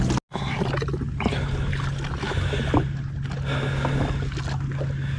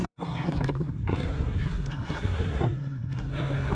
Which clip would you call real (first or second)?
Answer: first